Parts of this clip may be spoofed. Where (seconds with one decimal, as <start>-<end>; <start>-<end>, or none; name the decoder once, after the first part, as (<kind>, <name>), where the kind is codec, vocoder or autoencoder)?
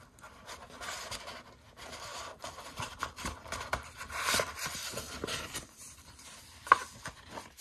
2.1-6.7 (vocoder, BigVGAN v2)